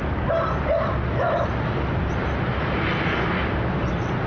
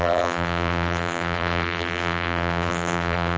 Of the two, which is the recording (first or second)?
first